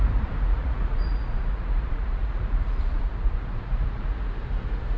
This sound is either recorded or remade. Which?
remade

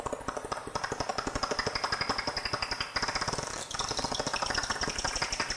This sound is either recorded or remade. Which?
recorded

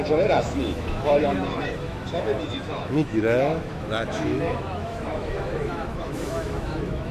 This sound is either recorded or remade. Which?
remade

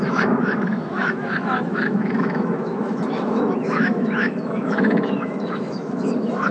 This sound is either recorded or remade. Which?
remade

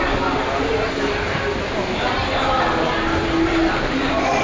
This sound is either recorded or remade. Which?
recorded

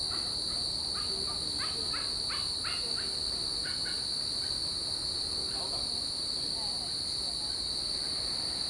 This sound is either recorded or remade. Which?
recorded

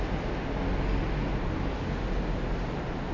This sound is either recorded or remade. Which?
recorded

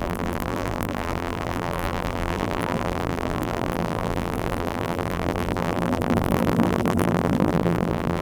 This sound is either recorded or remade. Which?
remade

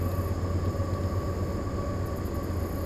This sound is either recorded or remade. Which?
recorded